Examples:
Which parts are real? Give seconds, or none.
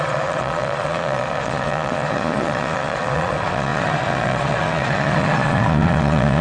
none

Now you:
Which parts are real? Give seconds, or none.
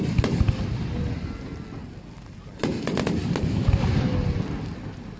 0.0-5.2